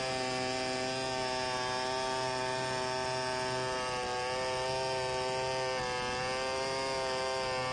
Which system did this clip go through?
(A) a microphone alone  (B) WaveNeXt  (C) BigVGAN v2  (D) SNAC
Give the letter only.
A